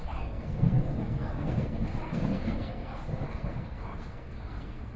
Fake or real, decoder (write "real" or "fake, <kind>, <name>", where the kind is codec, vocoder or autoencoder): fake, codec, SNAC